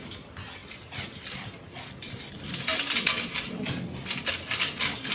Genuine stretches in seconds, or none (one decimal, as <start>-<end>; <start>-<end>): 0.0-0.6; 2.3-5.1